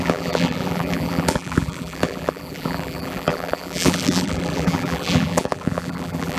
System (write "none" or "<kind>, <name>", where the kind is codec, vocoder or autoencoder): vocoder, BigVGAN v2